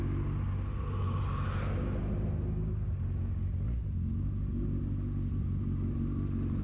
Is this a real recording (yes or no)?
yes